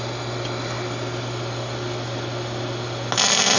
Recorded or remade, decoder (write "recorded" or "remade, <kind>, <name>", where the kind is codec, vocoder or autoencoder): recorded